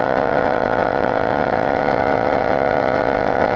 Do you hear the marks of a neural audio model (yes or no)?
yes